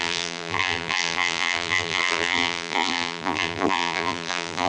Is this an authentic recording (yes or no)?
no